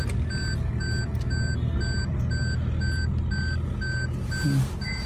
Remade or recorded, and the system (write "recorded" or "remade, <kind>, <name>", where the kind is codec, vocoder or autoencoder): recorded